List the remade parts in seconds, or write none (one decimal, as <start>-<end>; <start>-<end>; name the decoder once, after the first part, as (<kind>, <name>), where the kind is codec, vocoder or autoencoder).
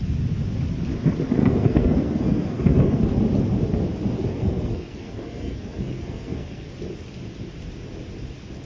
1.4-3.0 (codec, SNAC); 4.3-6.7